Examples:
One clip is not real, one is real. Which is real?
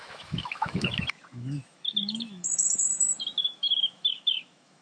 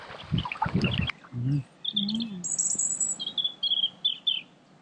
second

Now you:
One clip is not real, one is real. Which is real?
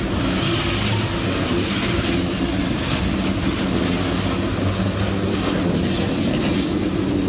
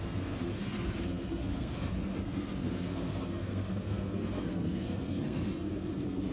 first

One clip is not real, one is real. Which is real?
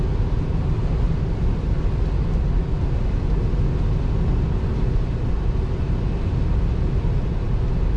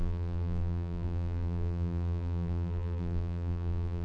first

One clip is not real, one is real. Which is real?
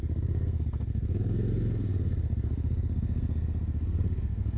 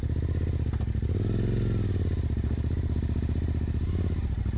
second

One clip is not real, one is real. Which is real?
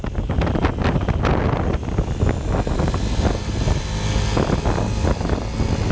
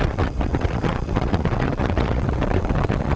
first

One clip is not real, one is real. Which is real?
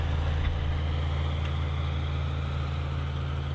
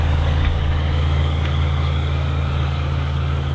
first